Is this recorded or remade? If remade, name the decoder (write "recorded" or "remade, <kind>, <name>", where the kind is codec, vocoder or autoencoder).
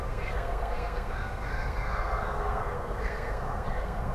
remade, codec, SNAC